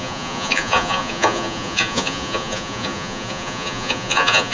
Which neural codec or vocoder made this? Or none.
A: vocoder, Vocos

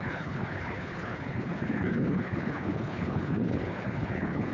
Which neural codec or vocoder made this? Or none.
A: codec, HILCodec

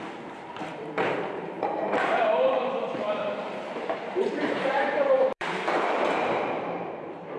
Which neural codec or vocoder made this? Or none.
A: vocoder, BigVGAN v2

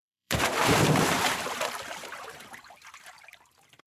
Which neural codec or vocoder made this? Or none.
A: vocoder, BigVGAN v2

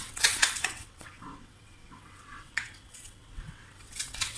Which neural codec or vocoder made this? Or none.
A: vocoder, WaveNeXt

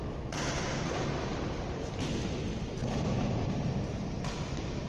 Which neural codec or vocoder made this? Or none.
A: none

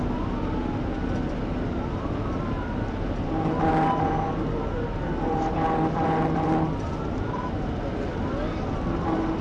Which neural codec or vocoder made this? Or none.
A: none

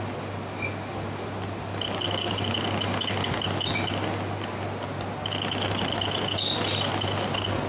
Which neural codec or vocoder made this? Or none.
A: none